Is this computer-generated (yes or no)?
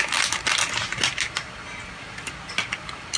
no